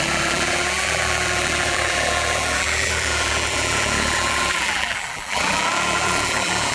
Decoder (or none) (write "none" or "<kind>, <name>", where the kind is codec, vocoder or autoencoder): vocoder, BigVGAN v2